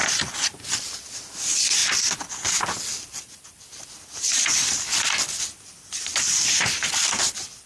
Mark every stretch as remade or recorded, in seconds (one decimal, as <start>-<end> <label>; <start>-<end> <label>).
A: 0.0-7.7 recorded